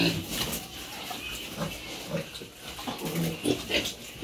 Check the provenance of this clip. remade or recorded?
recorded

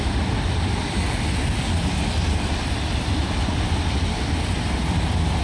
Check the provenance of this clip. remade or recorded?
recorded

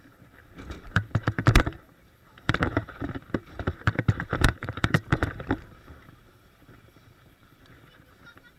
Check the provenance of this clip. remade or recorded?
remade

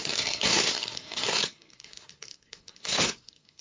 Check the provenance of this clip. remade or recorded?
remade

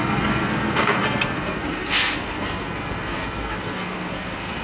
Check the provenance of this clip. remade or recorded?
remade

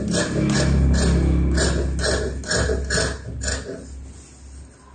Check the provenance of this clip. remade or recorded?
recorded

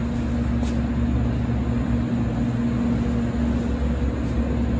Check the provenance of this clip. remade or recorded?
recorded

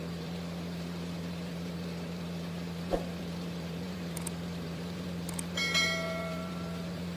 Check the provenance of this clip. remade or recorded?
remade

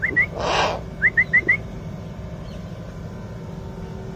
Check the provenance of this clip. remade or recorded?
recorded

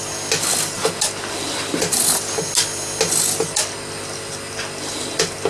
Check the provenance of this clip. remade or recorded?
recorded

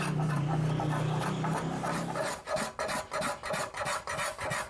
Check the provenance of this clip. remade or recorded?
recorded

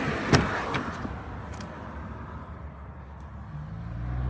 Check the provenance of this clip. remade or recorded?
recorded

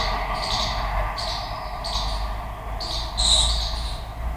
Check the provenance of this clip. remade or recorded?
recorded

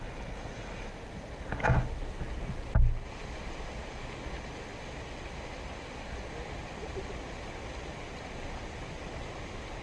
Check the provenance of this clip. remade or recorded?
recorded